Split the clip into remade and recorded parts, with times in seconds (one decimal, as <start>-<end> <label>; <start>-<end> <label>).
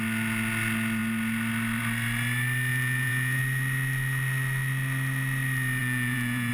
0.0-2.7 recorded; 2.7-3.4 remade; 3.4-5.8 recorded; 5.8-6.5 remade